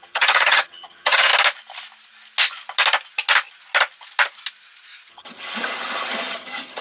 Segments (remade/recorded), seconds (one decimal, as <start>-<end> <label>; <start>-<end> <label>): 0.0-1.3 remade; 1.3-5.1 recorded; 5.1-6.8 remade